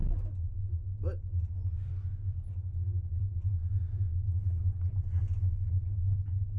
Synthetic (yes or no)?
no